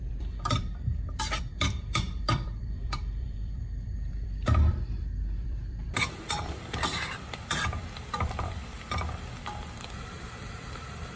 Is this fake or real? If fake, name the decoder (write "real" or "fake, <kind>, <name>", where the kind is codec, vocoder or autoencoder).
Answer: fake, vocoder, BigVGAN v2